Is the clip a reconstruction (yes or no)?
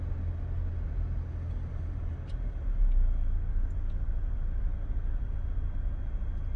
no